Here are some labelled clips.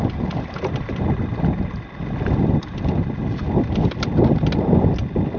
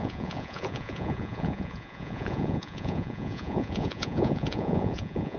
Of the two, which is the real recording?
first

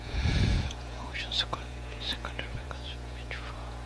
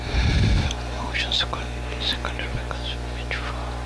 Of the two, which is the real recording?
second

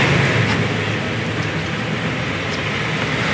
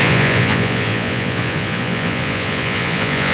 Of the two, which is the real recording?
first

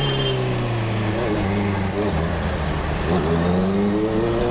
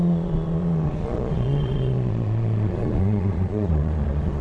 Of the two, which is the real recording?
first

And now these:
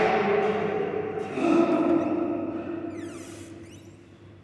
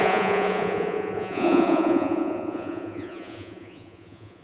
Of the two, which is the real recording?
first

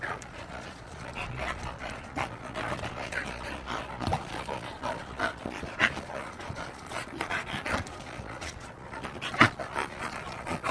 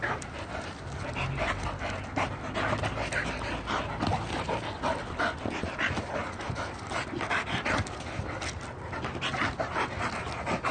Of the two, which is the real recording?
second